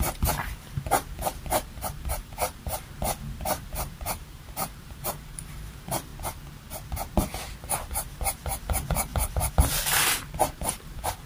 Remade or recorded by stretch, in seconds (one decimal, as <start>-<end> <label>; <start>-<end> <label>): 0.0-6.1 remade; 6.1-7.8 recorded; 7.8-9.1 remade; 9.1-10.6 recorded; 10.6-11.3 remade